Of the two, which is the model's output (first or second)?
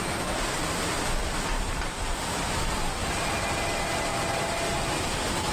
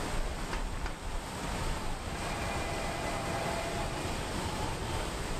second